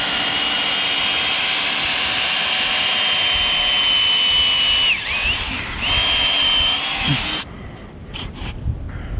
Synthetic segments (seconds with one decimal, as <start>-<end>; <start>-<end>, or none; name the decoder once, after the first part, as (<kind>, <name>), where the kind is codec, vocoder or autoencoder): 8.0-8.7 (vocoder, BigVGAN v2)